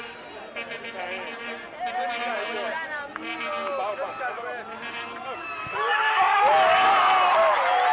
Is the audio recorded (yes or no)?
yes